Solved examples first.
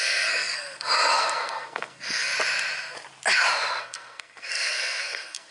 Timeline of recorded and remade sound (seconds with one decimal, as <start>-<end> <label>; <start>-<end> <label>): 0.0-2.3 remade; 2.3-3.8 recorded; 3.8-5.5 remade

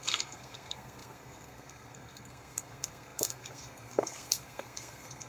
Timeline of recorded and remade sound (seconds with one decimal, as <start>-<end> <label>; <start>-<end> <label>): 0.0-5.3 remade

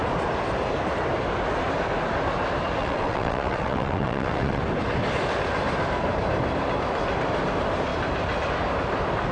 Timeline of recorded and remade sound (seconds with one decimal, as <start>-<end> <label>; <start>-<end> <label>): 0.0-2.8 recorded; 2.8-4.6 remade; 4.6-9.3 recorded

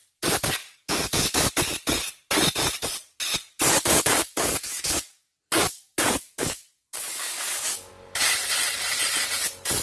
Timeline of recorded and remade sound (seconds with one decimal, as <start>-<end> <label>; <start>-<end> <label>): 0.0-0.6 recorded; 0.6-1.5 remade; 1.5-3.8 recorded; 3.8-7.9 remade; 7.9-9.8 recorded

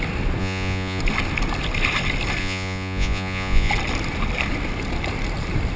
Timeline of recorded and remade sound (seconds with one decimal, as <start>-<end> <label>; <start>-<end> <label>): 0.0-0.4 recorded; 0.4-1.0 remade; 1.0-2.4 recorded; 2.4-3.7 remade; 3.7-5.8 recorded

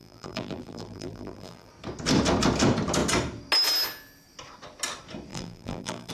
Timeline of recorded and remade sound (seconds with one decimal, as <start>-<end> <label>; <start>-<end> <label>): 0.0-1.7 remade; 1.7-5.3 recorded; 5.3-6.1 remade

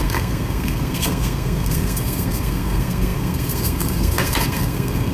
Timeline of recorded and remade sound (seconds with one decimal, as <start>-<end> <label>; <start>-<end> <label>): 0.0-5.1 remade